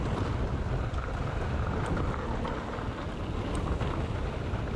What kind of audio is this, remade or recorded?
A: recorded